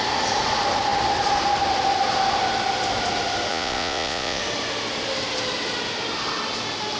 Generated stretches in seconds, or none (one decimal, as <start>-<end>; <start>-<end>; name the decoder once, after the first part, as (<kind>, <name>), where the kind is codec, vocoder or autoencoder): 3.5-4.4 (vocoder, Vocos)